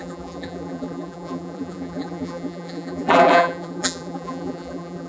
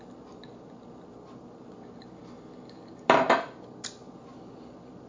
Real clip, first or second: second